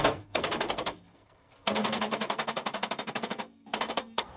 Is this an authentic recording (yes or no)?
no